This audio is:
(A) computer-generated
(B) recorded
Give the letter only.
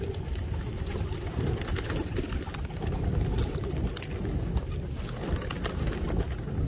B